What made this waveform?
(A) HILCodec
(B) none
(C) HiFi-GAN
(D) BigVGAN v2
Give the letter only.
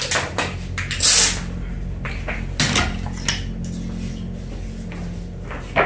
B